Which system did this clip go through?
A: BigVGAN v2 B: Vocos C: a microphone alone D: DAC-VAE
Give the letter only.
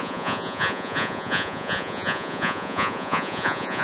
B